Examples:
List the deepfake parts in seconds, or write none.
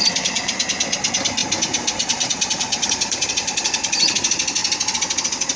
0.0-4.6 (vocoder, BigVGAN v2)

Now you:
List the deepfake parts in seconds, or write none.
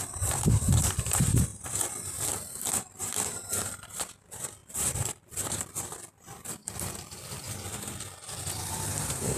0.0-1.5 (vocoder, BigVGAN v2); 2.8-9.4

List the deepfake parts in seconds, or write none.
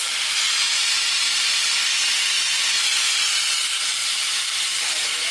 4.0-5.3 (vocoder, BigVGAN v2)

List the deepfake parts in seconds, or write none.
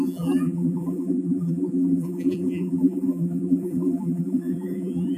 0.0-5.2 (vocoder, BigVGAN v2)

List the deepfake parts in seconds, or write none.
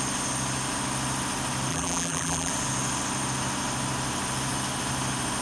1.7-2.5 (vocoder, BigVGAN v2)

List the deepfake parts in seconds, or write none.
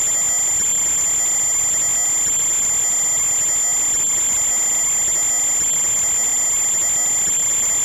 none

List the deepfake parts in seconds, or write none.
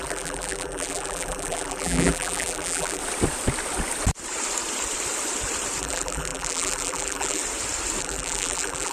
0.0-3.0 (vocoder, BigVGAN v2); 5.8-7.4; 8.0-8.9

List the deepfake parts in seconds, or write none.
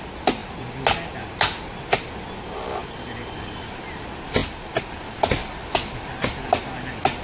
2.8-3.6 (vocoder, BigVGAN v2)